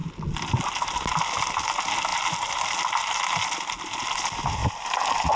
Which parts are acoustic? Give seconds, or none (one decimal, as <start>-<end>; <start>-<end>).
0.0-2.1; 3.7-4.6